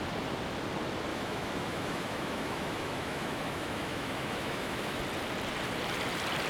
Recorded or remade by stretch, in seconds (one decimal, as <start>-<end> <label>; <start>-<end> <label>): 0.0-1.1 recorded; 1.1-5.0 remade; 5.0-6.5 recorded